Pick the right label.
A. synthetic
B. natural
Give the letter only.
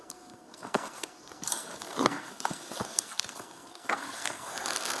A